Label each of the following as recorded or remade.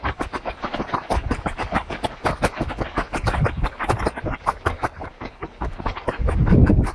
remade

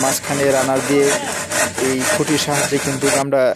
recorded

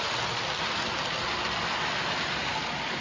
recorded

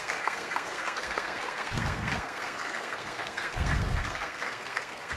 remade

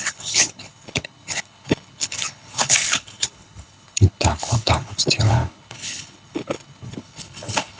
remade